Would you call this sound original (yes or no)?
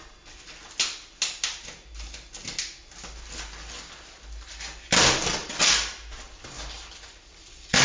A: yes